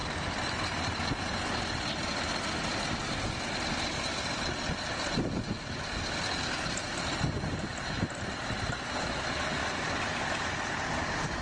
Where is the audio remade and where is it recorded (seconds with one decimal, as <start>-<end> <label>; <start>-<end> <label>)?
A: 0.0-11.4 recorded